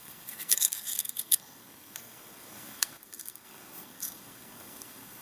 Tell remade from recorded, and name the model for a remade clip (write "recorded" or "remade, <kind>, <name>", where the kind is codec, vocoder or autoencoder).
remade, codec, SNAC